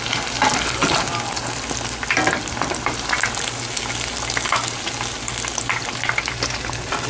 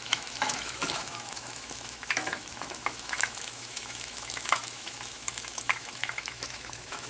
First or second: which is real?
first